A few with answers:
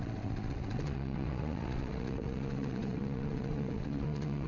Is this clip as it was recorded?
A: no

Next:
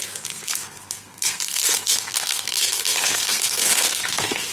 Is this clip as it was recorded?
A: no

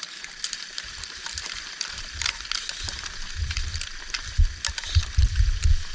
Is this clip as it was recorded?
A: yes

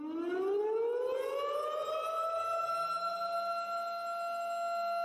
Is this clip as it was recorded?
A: yes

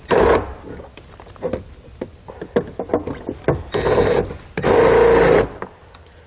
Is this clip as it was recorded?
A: yes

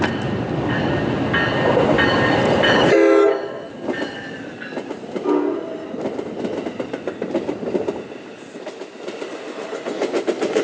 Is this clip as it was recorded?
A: yes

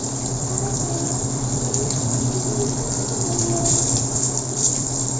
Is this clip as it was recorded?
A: no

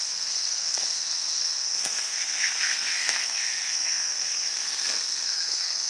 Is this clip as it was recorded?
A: no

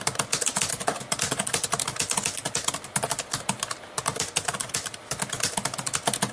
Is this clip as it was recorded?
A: yes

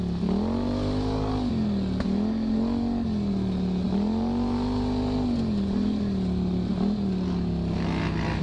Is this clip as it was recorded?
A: yes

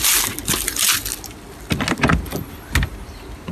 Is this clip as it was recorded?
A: yes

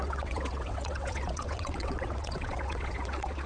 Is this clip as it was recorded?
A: no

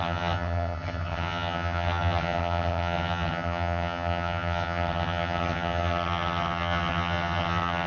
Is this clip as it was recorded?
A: no